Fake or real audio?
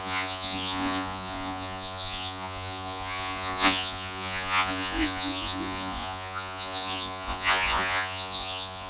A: fake